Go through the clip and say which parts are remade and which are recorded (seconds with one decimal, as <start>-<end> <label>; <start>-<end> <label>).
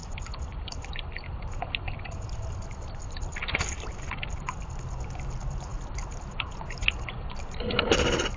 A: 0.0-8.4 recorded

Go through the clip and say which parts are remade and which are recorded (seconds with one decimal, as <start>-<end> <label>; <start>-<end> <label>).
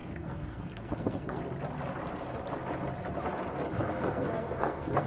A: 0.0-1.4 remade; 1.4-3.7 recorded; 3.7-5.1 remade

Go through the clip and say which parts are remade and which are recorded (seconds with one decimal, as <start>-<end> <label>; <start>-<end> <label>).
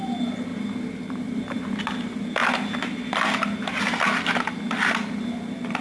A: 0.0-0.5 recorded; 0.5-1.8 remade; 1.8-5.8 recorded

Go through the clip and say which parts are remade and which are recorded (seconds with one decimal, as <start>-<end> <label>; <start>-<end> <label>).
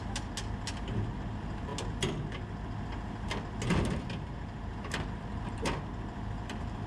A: 0.0-6.9 recorded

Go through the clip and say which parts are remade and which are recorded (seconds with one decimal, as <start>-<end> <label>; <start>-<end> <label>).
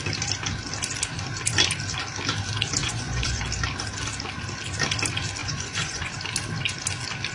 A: 0.0-2.8 recorded; 2.8-3.4 remade; 3.4-5.4 recorded; 5.4-6.1 remade; 6.1-7.3 recorded